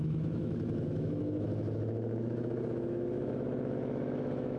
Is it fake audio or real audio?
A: fake